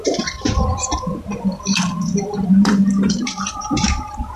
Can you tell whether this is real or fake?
fake